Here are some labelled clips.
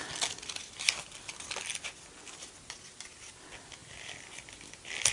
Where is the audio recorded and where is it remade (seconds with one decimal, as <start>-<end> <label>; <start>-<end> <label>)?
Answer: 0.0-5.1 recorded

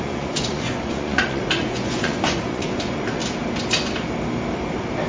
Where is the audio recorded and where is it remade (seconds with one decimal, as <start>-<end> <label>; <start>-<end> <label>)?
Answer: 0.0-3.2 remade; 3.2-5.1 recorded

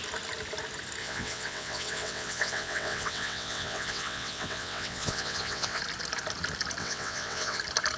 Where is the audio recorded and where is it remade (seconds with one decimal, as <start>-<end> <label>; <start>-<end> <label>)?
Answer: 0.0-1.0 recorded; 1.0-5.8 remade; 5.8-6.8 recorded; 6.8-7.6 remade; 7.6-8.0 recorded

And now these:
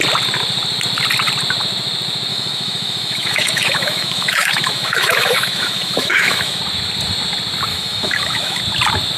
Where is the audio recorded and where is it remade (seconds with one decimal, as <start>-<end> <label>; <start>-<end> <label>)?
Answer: 0.0-2.3 recorded; 2.3-6.6 remade; 6.6-7.7 recorded; 7.7-8.6 remade; 8.6-9.2 recorded

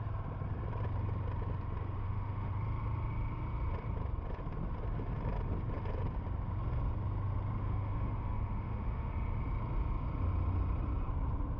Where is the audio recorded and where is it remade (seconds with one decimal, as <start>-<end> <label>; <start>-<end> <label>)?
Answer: 0.0-2.0 recorded; 2.0-2.5 remade; 2.5-7.6 recorded; 7.6-9.1 remade; 9.1-11.6 recorded